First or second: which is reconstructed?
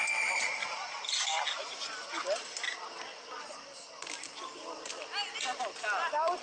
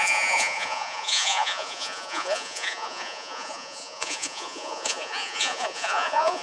second